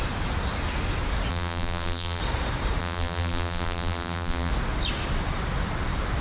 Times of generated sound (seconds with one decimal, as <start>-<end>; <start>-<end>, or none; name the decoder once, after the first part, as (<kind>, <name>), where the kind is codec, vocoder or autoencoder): 1.3-2.2 (vocoder, BigVGAN v2); 2.8-4.5